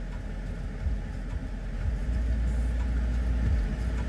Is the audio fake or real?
real